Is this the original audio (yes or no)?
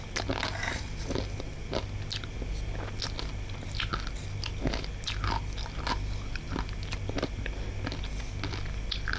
yes